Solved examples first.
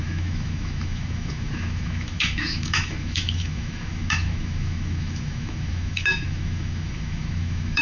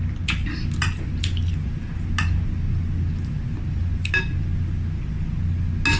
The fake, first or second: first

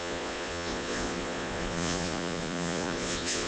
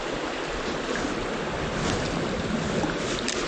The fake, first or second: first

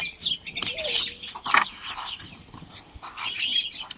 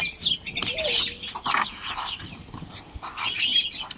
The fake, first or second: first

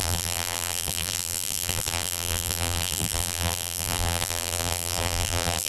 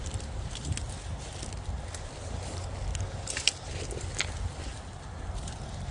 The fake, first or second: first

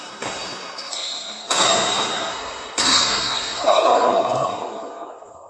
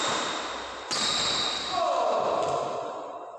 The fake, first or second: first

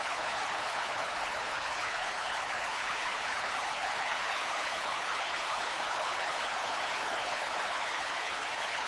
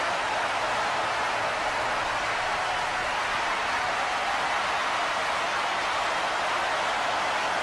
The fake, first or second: first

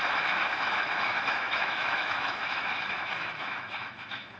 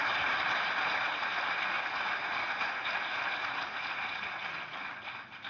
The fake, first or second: first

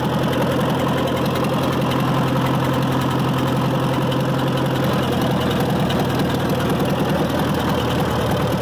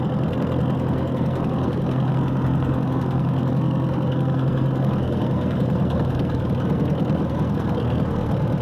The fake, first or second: second